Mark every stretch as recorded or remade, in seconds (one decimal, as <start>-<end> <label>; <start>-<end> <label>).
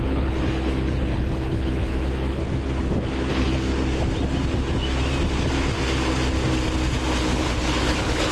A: 0.0-2.4 remade; 2.4-3.3 recorded; 3.3-3.7 remade; 3.7-7.2 recorded; 7.2-8.3 remade